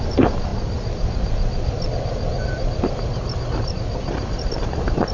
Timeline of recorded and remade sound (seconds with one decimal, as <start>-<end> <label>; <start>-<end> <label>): 0.0-5.1 recorded